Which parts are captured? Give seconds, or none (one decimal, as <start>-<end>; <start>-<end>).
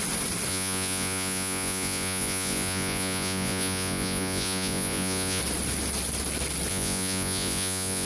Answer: 0.0-0.5; 5.4-6.7